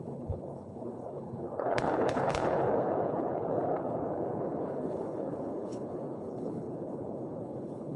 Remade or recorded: remade